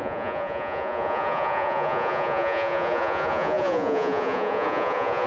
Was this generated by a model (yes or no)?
yes